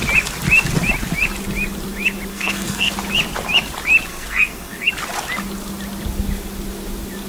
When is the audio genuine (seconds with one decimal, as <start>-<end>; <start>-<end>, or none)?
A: 0.0-2.3; 2.9-4.1; 4.9-7.3